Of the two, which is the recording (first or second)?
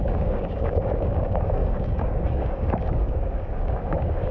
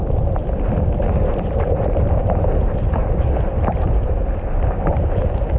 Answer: second